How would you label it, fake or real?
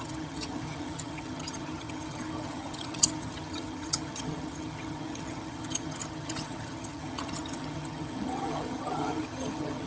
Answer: fake